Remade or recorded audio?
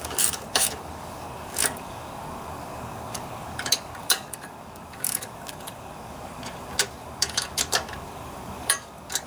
remade